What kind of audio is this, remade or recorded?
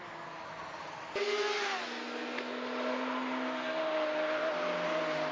recorded